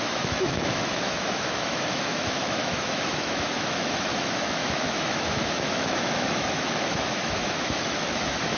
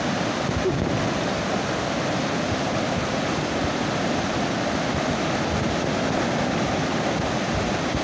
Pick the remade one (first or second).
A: first